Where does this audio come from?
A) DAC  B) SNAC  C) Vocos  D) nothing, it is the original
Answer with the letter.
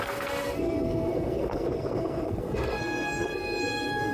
B